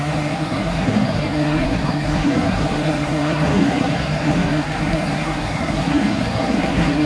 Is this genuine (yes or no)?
no